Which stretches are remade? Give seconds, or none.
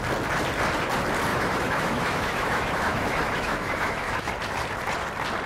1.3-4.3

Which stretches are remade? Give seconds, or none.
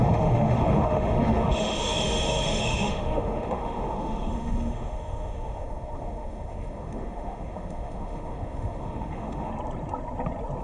0.0-9.5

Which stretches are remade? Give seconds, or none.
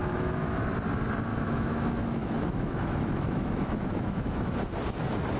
0.0-0.7; 1.3-4.5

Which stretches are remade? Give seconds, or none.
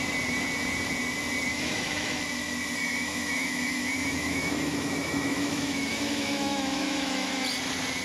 1.5-2.2; 2.8-7.3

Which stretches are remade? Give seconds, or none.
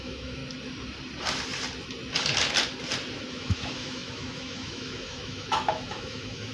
0.0-0.4; 3.3-6.5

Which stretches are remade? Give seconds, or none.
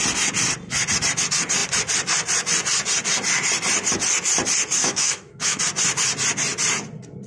4.8-5.6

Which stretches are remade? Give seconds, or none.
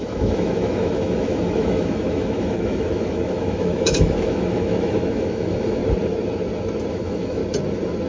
0.0-5.8; 6.9-7.4